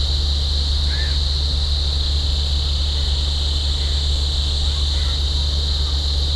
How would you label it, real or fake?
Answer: real